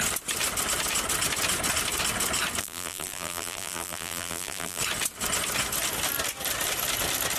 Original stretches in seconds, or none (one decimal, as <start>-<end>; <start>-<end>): 0.0-2.6; 4.8-7.4